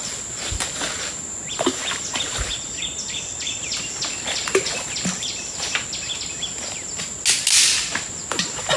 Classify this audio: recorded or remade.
recorded